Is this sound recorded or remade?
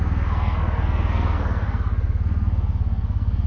remade